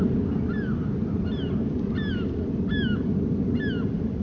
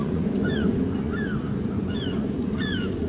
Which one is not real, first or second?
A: second